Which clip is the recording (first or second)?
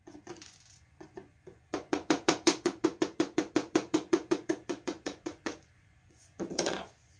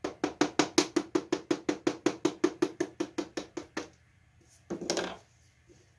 second